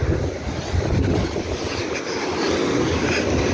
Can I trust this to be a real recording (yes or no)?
yes